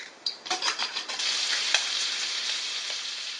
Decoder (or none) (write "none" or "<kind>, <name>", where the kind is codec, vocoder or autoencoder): vocoder, BigVGAN v2